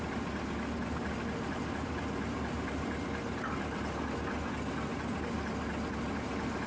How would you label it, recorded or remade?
recorded